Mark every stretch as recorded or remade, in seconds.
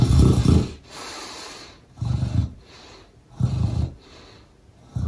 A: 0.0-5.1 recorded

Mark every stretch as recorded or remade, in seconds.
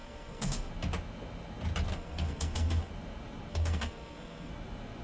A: 0.0-0.7 remade; 0.7-1.9 recorded; 1.9-2.9 remade; 2.9-3.5 recorded; 3.5-4.5 remade; 4.5-5.0 recorded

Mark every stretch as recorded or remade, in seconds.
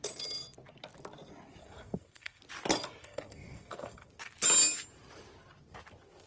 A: 0.0-1.6 recorded; 1.6-2.4 remade; 2.4-3.0 recorded; 3.0-4.1 remade; 4.1-6.3 recorded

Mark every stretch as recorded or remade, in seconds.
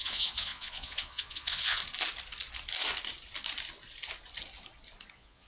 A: 0.0-1.8 remade; 1.8-5.1 recorded; 5.1-5.5 remade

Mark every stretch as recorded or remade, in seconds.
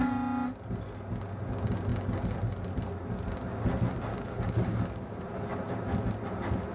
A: 0.0-4.1 recorded; 4.1-5.2 remade; 5.2-6.7 recorded